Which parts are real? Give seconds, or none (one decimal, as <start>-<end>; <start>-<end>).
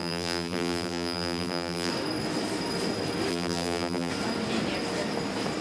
1.9-3.3; 4.1-5.6